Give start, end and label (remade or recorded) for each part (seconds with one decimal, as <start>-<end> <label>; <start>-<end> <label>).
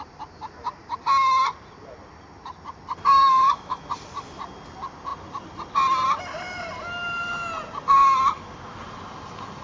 0.0-3.2 recorded; 3.2-3.9 remade; 3.9-9.6 recorded